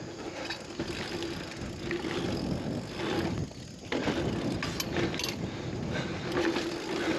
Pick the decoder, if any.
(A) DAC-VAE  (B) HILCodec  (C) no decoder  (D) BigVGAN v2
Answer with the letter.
C